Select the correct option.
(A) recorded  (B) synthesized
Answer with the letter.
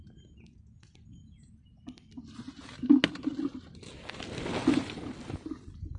A